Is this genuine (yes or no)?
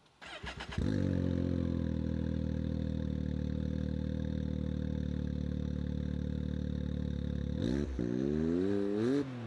yes